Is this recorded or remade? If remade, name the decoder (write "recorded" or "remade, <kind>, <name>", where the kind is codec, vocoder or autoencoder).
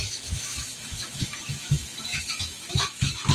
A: remade, autoencoder, DAC-VAE